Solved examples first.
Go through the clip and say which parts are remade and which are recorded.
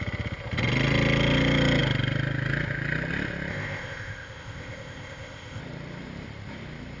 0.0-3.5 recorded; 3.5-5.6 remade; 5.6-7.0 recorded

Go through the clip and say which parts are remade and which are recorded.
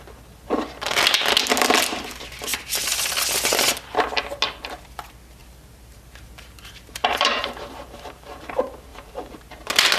0.0-2.5 recorded; 2.5-3.2 remade; 3.2-5.4 recorded; 5.4-8.5 remade; 8.5-8.9 recorded; 8.9-9.4 remade; 9.4-10.0 recorded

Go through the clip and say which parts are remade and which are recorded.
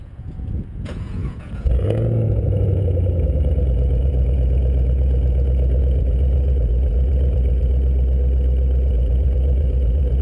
0.0-7.7 remade; 7.7-8.9 recorded; 8.9-10.2 remade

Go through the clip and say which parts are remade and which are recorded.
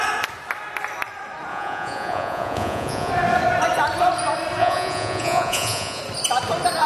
0.0-1.5 recorded; 1.5-3.1 remade; 3.1-4.6 recorded; 4.6-6.0 remade; 6.0-6.9 recorded